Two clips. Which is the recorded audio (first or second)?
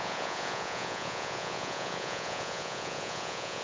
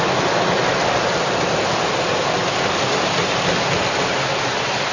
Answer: second